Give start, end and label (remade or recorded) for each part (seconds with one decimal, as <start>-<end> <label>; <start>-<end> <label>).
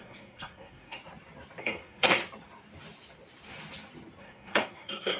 0.0-1.0 remade; 1.0-1.6 recorded; 1.6-2.2 remade; 2.2-4.2 recorded; 4.2-5.2 remade